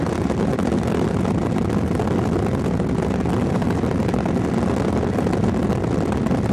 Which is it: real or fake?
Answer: real